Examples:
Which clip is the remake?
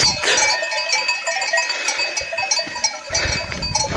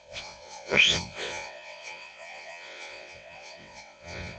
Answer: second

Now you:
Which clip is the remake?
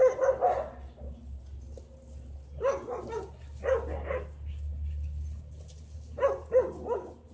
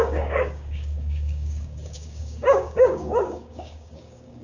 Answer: second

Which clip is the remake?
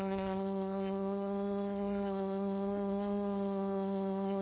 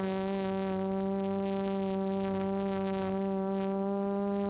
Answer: first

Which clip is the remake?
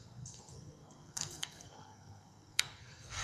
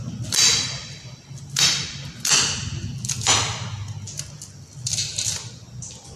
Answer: first